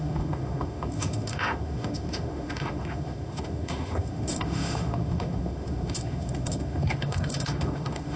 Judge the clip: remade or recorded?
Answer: remade